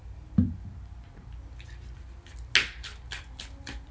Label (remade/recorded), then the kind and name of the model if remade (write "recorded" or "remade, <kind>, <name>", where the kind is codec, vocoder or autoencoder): recorded